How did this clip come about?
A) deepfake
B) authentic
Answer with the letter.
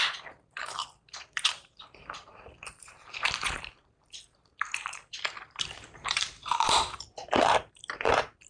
A